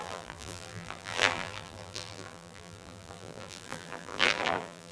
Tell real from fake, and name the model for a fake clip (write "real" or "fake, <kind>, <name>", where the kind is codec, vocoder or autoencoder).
fake, vocoder, BigVGAN v2